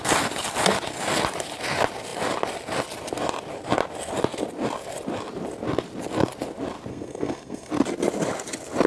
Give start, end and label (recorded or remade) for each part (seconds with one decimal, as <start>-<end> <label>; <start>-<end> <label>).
0.0-6.9 recorded; 6.9-7.7 remade; 7.7-8.9 recorded